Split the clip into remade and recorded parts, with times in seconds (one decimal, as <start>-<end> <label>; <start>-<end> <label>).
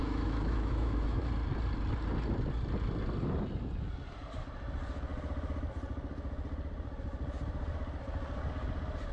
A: 0.0-1.2 remade; 1.2-9.1 recorded